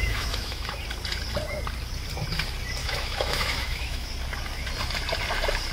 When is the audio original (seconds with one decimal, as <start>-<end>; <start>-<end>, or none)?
0.8-2.8; 4.1-5.7